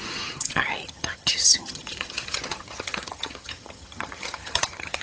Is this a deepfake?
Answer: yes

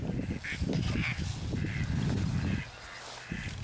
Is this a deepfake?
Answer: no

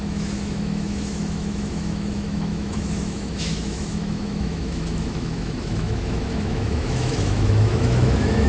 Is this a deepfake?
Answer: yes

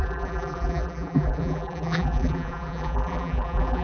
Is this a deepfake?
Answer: yes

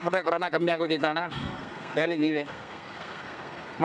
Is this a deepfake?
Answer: yes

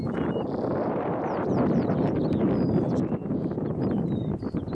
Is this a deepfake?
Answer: no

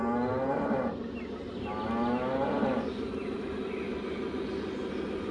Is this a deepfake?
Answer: no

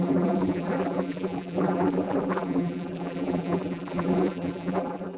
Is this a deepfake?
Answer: yes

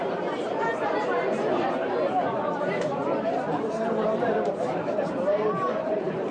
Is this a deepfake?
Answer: yes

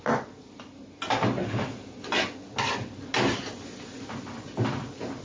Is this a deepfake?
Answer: no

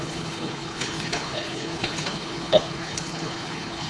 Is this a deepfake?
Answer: yes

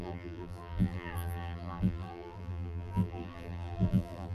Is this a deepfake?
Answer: yes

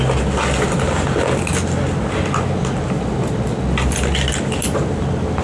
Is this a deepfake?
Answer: no